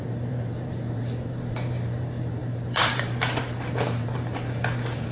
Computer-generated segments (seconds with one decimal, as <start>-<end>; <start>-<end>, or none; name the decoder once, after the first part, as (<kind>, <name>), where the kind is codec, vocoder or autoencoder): 0.0-5.1 (vocoder, BigVGAN v2)